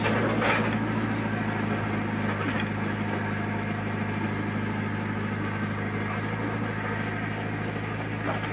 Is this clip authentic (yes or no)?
yes